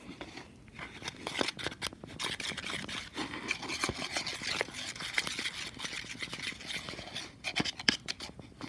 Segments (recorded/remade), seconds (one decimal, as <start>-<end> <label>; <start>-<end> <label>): 0.0-8.7 recorded